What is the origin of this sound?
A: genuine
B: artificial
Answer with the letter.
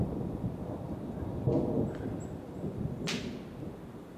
A